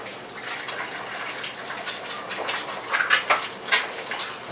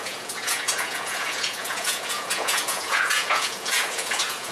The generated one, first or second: second